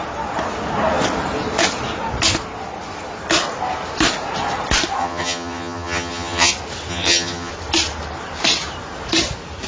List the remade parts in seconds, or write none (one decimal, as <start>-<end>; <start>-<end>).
5.0-6.5; 6.9-7.5